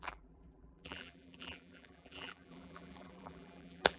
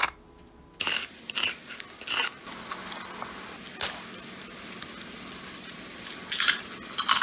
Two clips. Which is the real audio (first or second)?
second